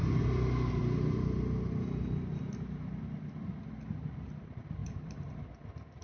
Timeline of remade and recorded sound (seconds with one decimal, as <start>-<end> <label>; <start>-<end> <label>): 0.0-4.8 recorded; 4.8-5.5 remade; 5.5-6.0 recorded